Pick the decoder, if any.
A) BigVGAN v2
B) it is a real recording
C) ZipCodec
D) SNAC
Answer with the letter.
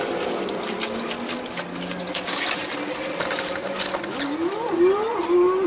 B